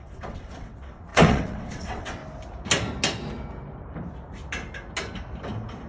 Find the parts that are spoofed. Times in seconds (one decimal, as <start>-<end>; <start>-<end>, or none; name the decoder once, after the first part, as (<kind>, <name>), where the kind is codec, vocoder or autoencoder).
0.0-2.2 (vocoder, WaveNeXt)